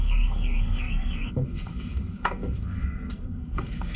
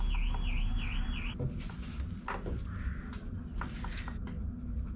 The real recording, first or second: second